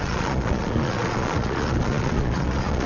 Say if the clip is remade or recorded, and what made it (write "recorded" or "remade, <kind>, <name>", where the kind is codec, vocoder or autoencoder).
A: remade, vocoder, Vocos